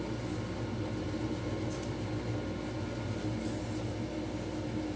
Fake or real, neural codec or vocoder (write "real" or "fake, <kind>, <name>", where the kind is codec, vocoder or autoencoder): real